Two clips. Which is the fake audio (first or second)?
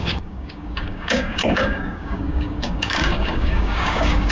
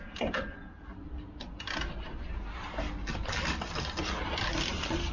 first